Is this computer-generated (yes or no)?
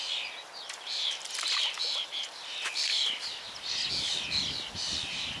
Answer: no